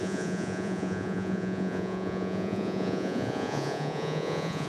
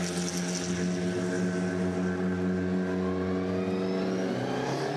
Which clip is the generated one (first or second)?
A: first